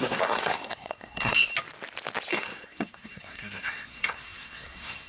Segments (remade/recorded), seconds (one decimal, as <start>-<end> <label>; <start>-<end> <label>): 0.0-1.5 remade; 1.5-2.3 recorded; 2.3-5.1 remade